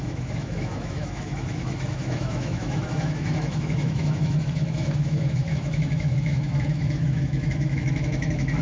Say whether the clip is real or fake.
fake